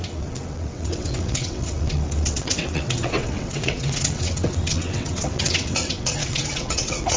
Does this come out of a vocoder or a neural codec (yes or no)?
yes